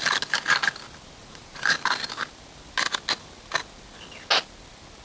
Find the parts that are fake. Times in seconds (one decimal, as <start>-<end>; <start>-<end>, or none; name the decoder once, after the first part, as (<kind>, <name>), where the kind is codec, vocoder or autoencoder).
1.2-1.7 (vocoder, Vocos)